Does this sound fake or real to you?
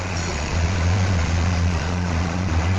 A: fake